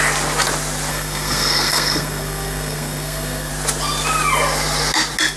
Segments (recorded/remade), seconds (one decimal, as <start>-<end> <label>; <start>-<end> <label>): 0.0-0.9 recorded; 0.9-3.5 remade; 3.5-5.4 recorded